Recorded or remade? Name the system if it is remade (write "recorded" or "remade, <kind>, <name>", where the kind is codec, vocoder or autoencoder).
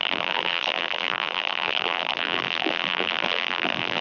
remade, vocoder, BigVGAN v2